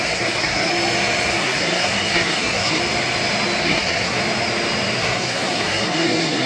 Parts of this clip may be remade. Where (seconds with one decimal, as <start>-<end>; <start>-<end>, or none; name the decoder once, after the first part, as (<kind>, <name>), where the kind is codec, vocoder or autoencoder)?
0.0-0.7 (codec, SNAC); 1.3-2.8; 3.6-4.2; 5.0-6.5